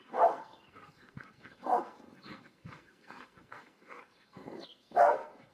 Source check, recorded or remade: remade